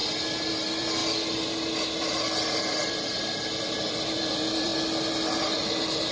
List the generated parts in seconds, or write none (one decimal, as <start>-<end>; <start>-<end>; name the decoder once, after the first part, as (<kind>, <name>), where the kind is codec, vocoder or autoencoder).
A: 0.5-1.0 (vocoder, BigVGAN v2); 2.6-4.7